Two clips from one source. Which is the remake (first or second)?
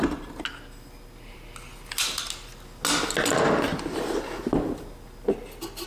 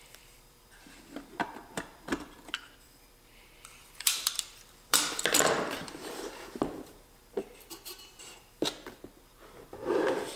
second